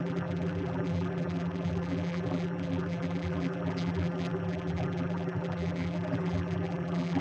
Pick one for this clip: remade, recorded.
remade